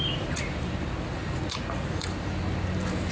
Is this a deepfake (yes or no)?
no